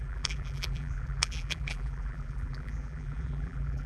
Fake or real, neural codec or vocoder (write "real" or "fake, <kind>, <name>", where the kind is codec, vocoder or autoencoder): fake, vocoder, BigVGAN v2